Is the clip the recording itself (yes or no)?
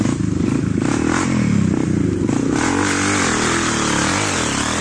yes